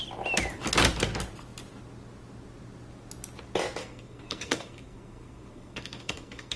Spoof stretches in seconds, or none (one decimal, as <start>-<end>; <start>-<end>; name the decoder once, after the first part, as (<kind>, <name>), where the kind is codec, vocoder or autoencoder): 3.8-6.6 (codec, SNAC)